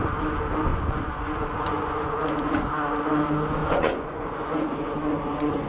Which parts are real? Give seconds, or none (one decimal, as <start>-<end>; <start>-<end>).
0.0-0.7; 2.7-3.6